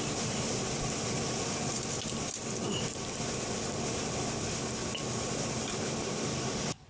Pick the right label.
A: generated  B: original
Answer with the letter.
B